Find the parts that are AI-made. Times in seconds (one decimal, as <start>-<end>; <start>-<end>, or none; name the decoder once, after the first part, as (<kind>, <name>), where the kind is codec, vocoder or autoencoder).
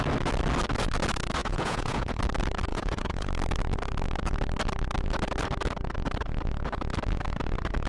1.4-2.2 (vocoder, Vocos); 2.7-3.3